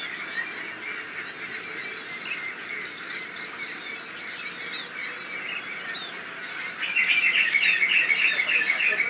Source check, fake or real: real